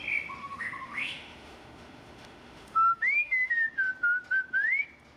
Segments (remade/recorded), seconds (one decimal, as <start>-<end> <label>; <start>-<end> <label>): 0.0-0.4 recorded; 0.4-3.5 remade; 3.5-5.2 recorded